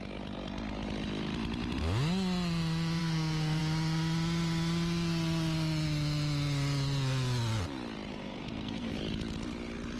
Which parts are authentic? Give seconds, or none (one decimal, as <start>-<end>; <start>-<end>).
0.0-3.0; 3.6-8.1; 9.0-10.0